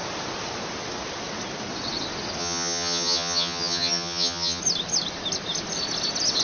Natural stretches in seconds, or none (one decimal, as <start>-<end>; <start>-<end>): 0.0-2.4; 4.6-6.4